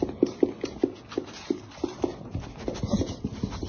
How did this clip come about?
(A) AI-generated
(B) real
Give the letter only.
B